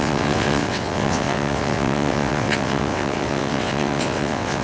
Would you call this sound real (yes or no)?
no